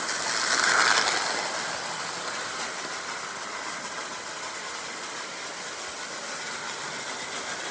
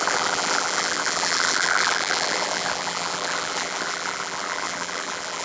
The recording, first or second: first